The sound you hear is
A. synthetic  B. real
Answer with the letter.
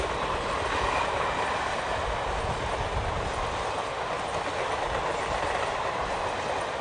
B